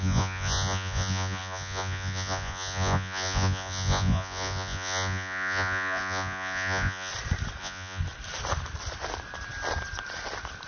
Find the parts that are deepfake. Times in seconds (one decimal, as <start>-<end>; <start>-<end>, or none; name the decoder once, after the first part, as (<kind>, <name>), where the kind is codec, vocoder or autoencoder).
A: 0.0-7.1 (vocoder, Vocos); 7.6-8.0